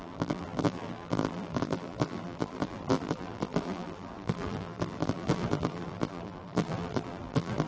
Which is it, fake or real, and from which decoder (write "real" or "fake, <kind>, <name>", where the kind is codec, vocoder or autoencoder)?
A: fake, vocoder, BigVGAN v2